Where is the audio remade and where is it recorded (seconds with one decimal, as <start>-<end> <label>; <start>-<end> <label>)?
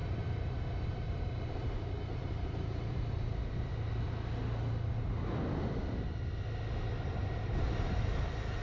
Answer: 0.0-3.7 remade; 3.7-7.2 recorded; 7.2-7.9 remade; 7.9-8.6 recorded